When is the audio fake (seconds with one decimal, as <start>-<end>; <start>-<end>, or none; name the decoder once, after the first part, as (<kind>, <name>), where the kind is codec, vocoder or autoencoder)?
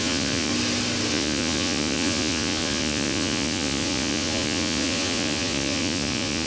0.0-0.5 (vocoder, Vocos); 1.1-6.5